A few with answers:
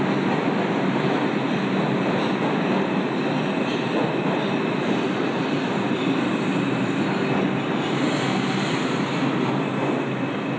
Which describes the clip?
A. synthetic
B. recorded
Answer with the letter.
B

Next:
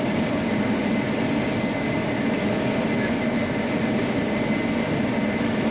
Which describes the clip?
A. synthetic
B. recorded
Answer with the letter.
B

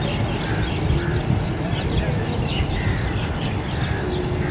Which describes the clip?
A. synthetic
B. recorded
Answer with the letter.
B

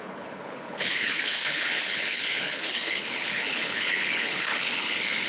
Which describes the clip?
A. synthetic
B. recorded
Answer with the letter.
A